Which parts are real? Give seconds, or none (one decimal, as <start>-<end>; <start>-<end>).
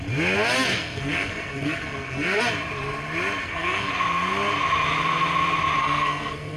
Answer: 0.0-0.7; 2.4-3.4; 3.9-5.8